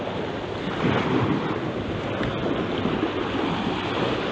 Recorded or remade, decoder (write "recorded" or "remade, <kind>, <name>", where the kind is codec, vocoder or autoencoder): recorded